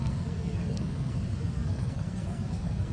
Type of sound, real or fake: fake